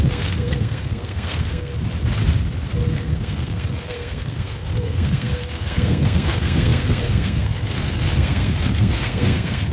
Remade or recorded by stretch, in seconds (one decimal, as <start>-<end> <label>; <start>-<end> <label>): 0.0-1.7 remade; 1.7-2.7 recorded; 2.7-9.7 remade